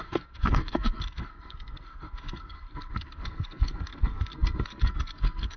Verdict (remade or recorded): remade